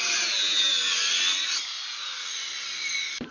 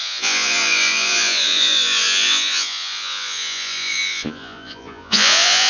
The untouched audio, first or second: first